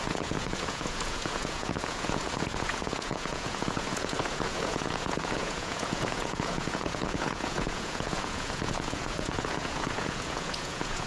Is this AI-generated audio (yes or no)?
yes